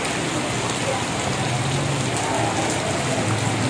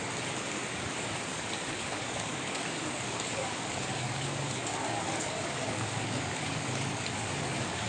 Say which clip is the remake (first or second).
second